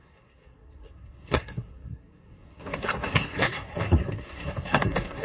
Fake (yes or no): yes